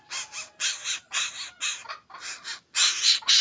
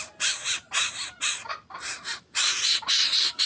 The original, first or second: first